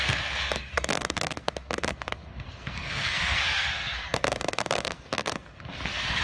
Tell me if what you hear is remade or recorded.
remade